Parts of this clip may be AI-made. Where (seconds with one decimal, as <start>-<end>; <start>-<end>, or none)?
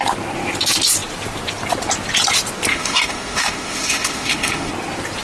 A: 2.7-4.7